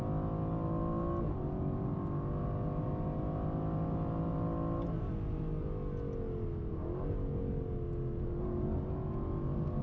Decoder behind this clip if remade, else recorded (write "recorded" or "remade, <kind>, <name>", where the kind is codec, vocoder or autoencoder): recorded